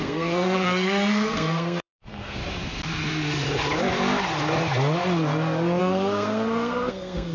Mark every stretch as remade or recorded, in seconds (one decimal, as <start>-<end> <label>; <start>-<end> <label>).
0.0-2.4 remade; 2.4-5.8 recorded; 5.8-7.3 remade